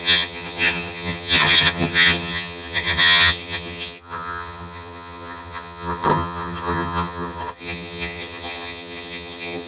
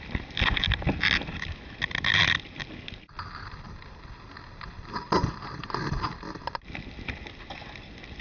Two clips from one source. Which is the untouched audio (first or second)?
second